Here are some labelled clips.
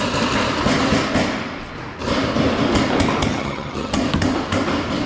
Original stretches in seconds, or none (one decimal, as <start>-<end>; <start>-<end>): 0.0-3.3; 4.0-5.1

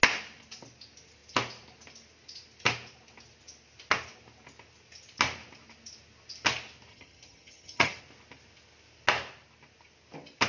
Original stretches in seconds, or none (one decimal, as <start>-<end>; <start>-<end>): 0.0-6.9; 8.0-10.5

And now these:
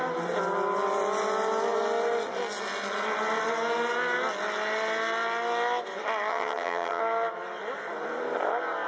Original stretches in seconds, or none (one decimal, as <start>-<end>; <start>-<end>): 0.0-6.3; 7.0-8.9

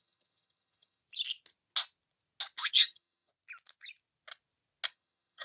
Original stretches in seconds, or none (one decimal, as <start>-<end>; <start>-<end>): 1.0-2.7; 3.3-4.9

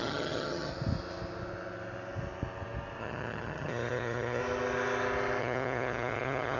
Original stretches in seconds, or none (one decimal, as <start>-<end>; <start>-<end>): 0.7-3.0; 4.4-5.4

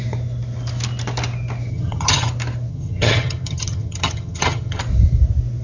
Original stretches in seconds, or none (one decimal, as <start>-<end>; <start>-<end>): 0.0-1.7; 2.3-2.7; 4.8-5.6

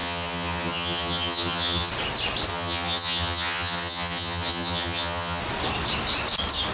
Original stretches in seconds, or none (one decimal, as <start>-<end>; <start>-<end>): 1.9-2.5; 5.4-6.7